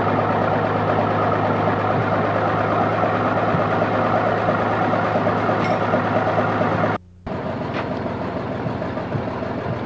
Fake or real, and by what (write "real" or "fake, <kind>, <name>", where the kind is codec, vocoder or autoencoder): real